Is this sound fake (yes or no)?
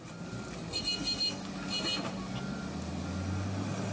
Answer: no